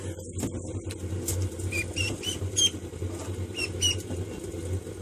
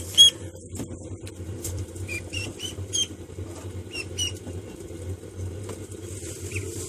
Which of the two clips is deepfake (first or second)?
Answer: second